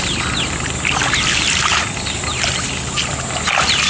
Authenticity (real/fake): real